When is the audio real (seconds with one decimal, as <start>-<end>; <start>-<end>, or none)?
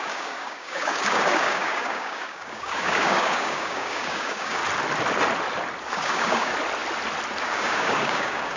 4.6-5.9; 6.5-7.4